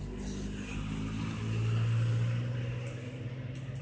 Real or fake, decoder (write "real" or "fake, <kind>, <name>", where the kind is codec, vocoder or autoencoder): real